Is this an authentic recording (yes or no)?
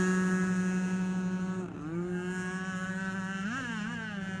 yes